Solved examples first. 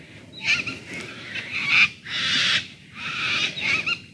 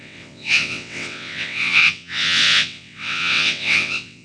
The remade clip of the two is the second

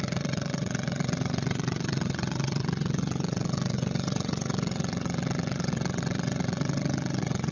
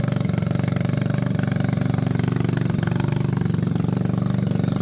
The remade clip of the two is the first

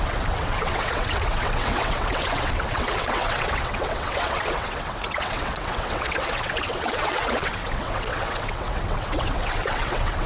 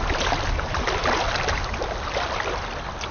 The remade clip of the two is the first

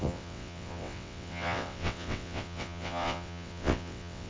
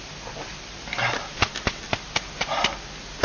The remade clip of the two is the first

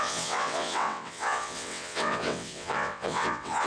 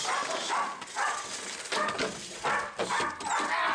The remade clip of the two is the first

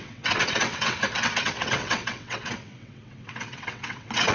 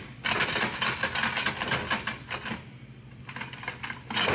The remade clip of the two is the first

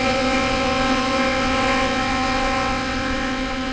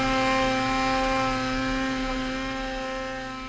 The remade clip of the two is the first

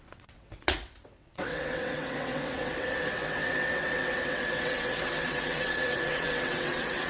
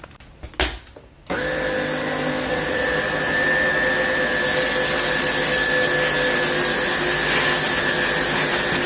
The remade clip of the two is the first